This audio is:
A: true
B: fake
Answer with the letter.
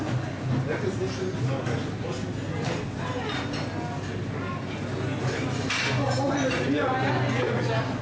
A